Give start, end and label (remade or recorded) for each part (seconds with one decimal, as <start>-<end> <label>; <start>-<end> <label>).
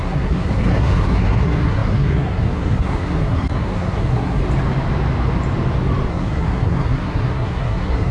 0.0-4.4 remade; 4.4-6.1 recorded; 6.1-8.1 remade